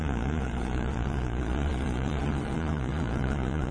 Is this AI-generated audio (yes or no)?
yes